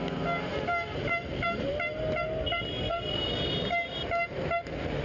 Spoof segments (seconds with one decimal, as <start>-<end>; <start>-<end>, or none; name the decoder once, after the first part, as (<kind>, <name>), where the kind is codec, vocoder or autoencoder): 0.5-1.7 (vocoder, BigVGAN v2); 2.9-4.4